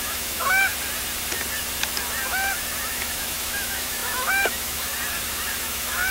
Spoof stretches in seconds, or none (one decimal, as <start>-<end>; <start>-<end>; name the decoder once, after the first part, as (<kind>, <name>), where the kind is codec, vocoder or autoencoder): 0.0-0.7 (autoencoder, DAC-VAE); 2.9-4.9; 5.6-6.1